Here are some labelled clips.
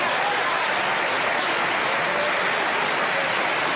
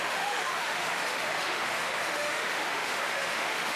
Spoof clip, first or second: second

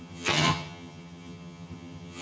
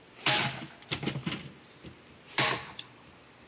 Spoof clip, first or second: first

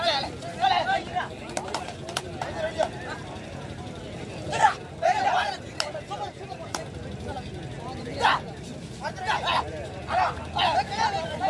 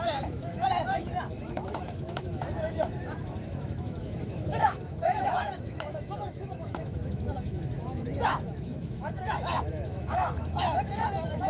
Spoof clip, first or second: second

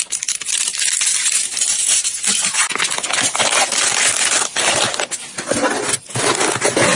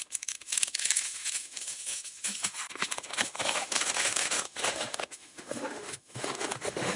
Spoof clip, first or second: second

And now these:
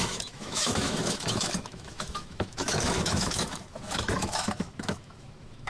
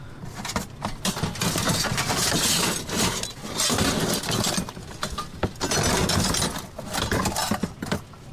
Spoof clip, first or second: first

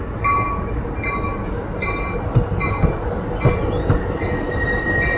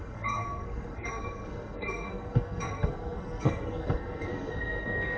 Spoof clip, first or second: second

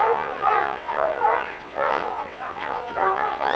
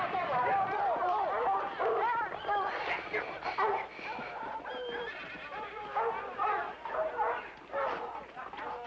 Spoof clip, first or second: first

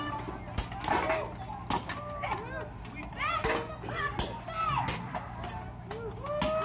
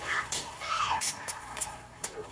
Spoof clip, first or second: second